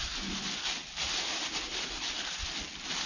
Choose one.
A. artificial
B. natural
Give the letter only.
B